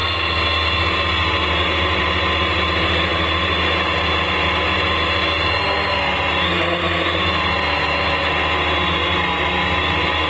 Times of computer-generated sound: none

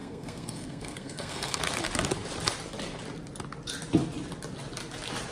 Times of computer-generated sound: 0.0-1.6 (codec, SNAC)

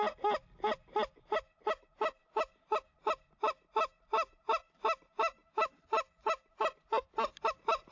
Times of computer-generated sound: 5.4-7.1 (vocoder, BigVGAN v2)

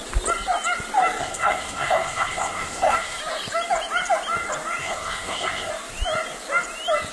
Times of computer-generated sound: 1.2-3.2 (codec, SNAC); 4.8-5.7

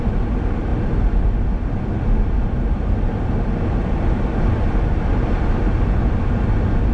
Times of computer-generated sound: none

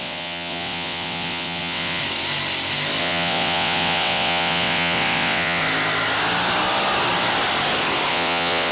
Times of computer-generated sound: 0.0-2.0 (vocoder, WaveNeXt); 3.0-5.6; 8.1-8.7

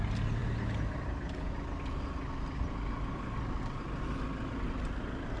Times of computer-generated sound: none